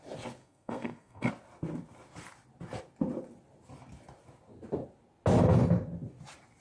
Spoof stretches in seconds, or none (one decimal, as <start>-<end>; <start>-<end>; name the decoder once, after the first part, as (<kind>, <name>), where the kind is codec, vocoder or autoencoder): 0.4-1.3 (codec, SNAC)